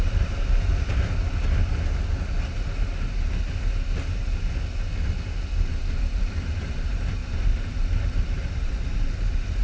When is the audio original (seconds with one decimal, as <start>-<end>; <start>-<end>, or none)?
0.7-5.5